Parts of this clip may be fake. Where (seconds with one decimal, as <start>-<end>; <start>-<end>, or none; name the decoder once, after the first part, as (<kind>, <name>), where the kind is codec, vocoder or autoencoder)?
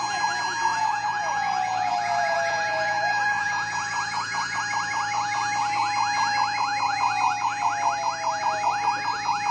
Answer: 0.7-4.6 (vocoder, Vocos)